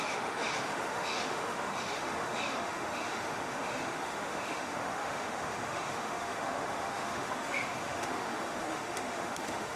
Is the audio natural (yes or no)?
no